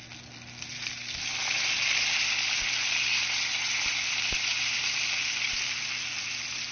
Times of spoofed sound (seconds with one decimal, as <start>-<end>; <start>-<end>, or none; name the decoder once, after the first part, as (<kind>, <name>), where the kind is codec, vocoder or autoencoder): none